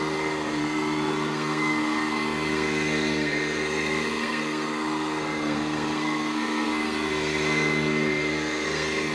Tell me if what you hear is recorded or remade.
remade